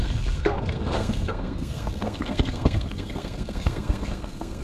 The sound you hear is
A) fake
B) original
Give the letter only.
A